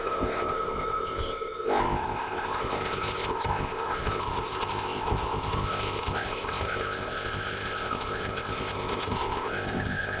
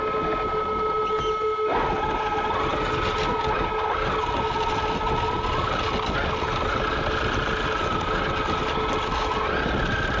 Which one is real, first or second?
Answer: second